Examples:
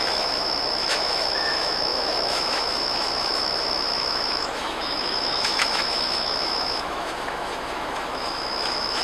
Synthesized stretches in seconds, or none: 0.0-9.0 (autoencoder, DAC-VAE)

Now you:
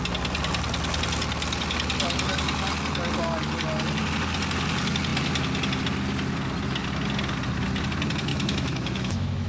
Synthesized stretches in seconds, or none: 8.3-9.5 (autoencoder, DAC-VAE)

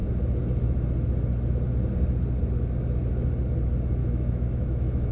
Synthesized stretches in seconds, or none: 4.0-5.1 (autoencoder, DAC-VAE)

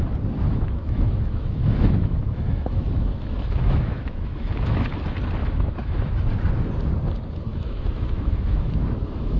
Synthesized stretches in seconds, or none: 0.5-4.9 (autoencoder, DAC-VAE); 5.4-6.2; 7.5-9.4

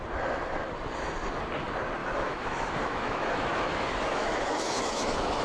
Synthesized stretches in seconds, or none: 2.0-5.4 (autoencoder, DAC-VAE)

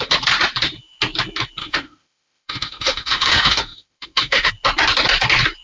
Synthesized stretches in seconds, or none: 1.6-4.5 (autoencoder, DAC-VAE)

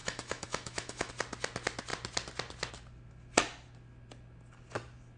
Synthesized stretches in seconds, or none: 0.0-1.1 (autoencoder, DAC-VAE)